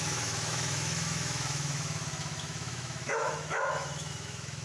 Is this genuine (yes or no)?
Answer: no